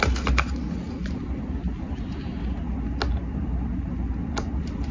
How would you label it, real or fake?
real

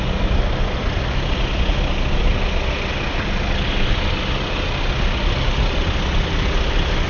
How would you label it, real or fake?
real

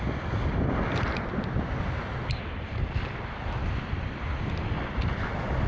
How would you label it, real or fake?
real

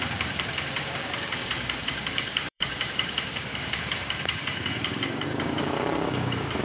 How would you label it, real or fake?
fake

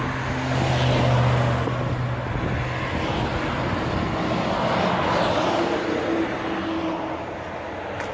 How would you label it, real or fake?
real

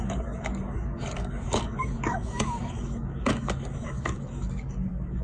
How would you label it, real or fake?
fake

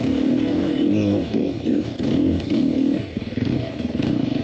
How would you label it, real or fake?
fake